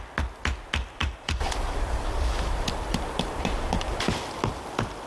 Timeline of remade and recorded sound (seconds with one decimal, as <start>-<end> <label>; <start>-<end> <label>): 0.0-1.0 recorded; 1.0-4.1 remade; 4.1-5.1 recorded